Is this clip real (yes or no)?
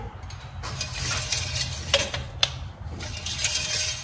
yes